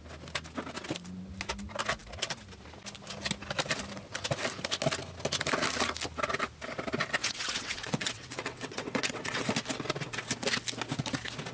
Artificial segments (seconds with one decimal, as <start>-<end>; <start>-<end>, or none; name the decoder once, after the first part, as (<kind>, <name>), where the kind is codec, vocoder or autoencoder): 7.2-9.5 (vocoder, WaveNeXt)